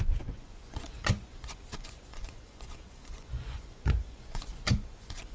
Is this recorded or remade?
remade